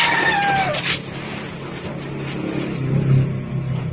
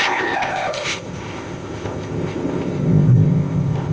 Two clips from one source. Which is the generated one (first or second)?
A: second